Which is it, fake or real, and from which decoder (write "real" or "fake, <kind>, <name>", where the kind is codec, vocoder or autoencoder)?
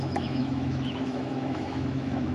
fake, autoencoder, DAC-VAE